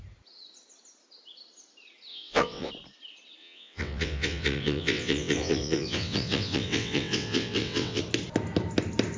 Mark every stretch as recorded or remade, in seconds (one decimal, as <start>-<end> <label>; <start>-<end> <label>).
0.0-2.1 recorded; 2.1-2.7 remade; 2.7-3.4 recorded; 3.4-8.0 remade; 8.0-9.2 recorded